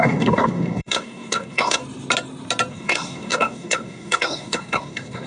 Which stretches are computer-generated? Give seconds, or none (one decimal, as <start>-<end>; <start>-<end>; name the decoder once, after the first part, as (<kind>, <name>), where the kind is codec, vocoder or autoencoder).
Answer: 0.0-1.8 (codec, SNAC); 2.7-5.3